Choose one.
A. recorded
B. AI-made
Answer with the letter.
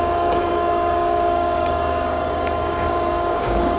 B